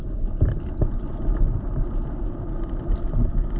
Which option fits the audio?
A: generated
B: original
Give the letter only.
B